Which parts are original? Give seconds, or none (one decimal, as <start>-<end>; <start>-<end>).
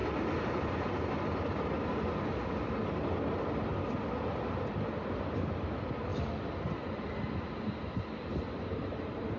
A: 0.0-9.4